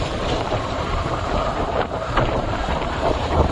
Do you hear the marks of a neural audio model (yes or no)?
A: yes